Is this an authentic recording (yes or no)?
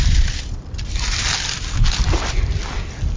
yes